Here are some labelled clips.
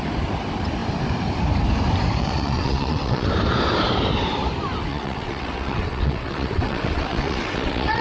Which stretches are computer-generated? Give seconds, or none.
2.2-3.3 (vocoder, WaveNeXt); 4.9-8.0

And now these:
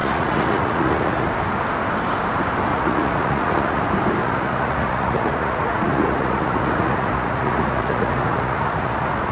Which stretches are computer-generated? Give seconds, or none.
0.0-1.3 (vocoder, Vocos); 2.7-3.8; 4.2-9.3

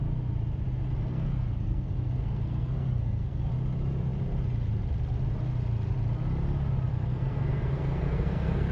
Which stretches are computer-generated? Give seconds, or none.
1.1-3.5 (codec, SNAC); 6.9-8.7

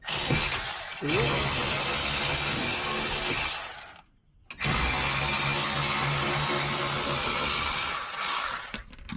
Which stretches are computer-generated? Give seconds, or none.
none

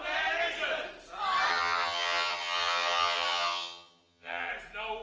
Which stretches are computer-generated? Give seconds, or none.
1.5-4.5 (vocoder, HiFi-GAN)

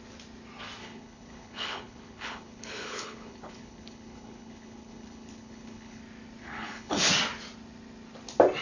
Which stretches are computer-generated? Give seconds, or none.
0.8-6.0 (codec, HILCodec); 6.4-7.1

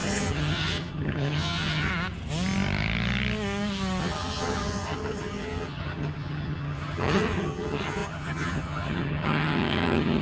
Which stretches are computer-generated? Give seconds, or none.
0.0-1.9 (vocoder, HiFi-GAN); 4.0-10.2

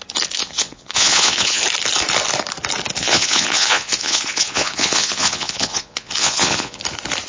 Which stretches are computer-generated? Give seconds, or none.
0.4-1.6 (vocoder, Vocos); 3.0-6.8